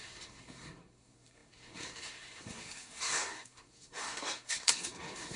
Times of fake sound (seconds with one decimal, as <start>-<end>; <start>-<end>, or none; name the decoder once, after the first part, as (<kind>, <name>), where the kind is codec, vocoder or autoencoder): 0.0-5.4 (codec, SNAC)